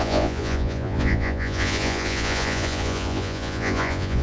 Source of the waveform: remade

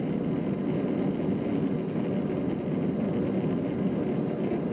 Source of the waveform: recorded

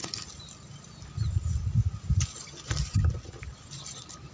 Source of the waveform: recorded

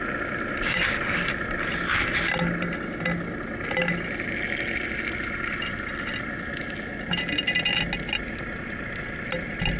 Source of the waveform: recorded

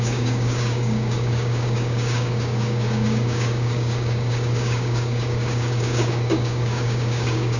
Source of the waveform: remade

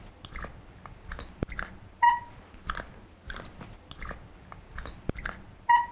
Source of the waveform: recorded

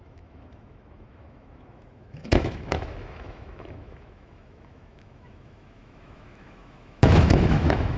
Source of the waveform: remade